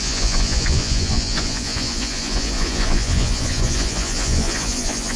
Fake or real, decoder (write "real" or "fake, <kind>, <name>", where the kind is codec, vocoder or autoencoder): fake, vocoder, Vocos